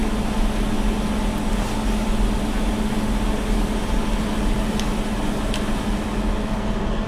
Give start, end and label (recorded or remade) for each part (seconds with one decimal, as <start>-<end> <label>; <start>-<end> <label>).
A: 0.0-6.4 recorded; 6.4-7.1 remade